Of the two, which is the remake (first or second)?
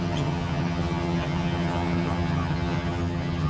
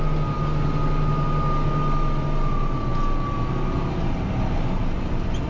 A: first